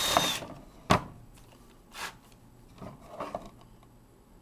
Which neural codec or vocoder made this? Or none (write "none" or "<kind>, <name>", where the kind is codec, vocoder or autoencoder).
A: none